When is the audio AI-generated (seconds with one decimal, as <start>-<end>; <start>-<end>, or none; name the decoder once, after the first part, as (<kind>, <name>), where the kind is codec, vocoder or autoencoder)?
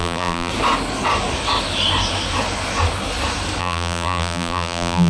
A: 0.0-0.5 (vocoder, BigVGAN v2); 3.6-5.1